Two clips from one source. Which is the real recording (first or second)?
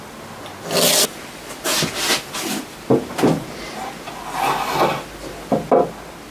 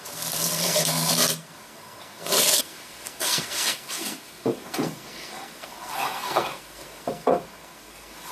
first